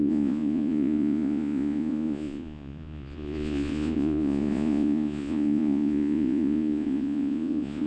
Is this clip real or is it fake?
fake